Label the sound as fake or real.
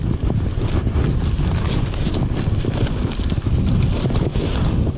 real